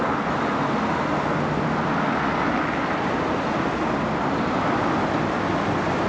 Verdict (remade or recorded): recorded